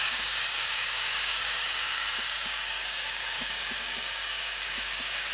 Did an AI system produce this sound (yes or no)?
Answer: yes